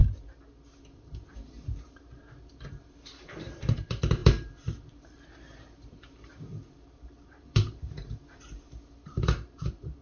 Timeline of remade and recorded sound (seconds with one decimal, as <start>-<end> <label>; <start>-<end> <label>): 0.0-0.8 recorded; 0.8-10.0 remade

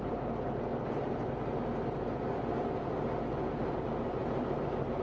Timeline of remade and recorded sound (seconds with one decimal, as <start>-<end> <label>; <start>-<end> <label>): 0.0-0.7 remade; 0.7-3.7 recorded; 3.7-5.0 remade

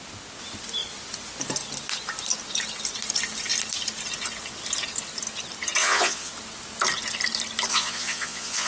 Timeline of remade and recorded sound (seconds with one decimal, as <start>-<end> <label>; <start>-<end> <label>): 0.0-5.8 recorded; 5.8-6.3 remade; 6.3-7.7 recorded; 7.7-8.7 remade

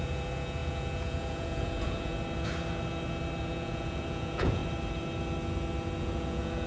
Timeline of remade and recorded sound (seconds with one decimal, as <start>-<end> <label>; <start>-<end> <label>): 0.0-2.1 remade; 2.1-3.4 recorded; 3.4-4.6 remade; 4.6-6.0 recorded; 6.0-6.7 remade